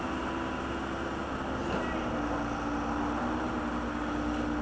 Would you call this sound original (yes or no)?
yes